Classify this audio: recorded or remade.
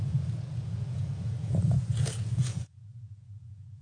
remade